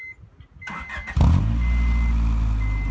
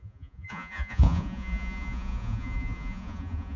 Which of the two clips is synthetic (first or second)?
second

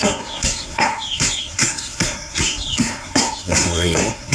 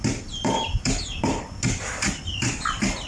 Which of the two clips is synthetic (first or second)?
first